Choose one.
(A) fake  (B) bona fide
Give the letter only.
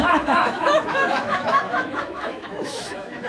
A